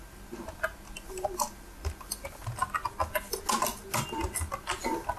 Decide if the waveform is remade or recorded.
recorded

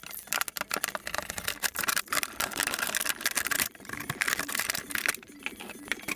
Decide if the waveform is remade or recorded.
recorded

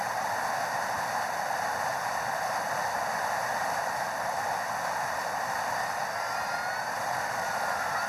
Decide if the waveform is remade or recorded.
recorded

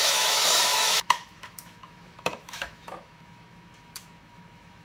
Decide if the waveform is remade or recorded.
remade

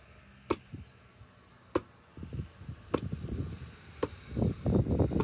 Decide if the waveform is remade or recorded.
recorded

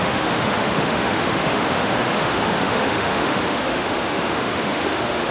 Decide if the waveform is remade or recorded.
remade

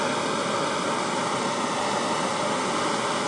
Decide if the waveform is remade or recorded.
recorded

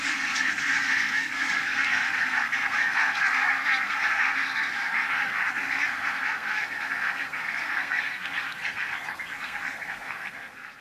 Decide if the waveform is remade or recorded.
remade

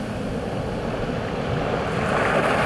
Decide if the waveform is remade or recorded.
recorded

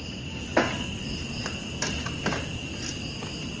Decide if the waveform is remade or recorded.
recorded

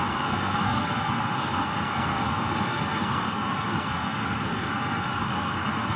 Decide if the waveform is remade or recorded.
remade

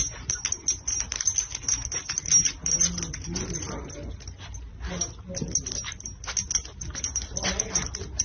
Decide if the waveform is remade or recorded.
recorded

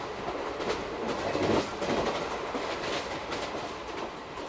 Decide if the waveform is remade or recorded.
recorded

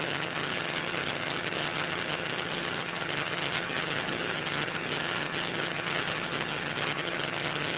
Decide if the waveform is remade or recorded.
remade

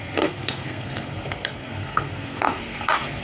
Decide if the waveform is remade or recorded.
remade